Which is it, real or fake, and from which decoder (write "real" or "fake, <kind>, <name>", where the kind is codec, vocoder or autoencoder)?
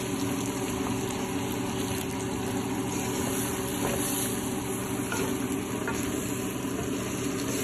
real